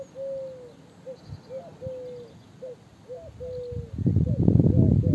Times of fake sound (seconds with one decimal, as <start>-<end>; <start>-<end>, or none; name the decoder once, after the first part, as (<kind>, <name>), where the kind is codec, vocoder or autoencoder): none